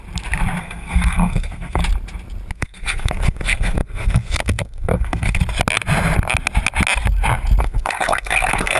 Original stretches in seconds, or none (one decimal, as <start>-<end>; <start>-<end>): 0.0-0.6; 1.8-2.5; 5.4-7.6